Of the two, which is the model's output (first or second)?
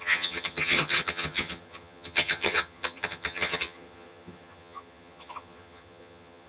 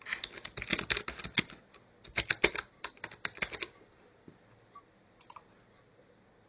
first